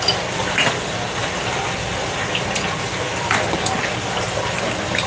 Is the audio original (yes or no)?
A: yes